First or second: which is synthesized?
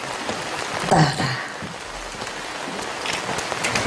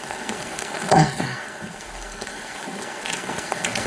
second